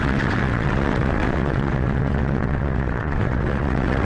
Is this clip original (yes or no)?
no